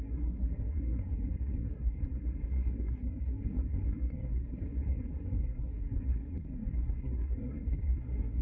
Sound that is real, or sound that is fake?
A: fake